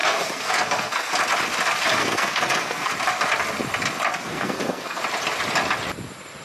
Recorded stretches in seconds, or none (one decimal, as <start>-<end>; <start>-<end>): 1.1-2.0; 2.9-4.1; 5.0-6.4